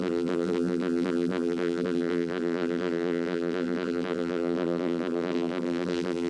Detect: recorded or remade remade